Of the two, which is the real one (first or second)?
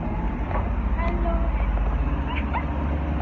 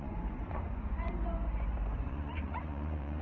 first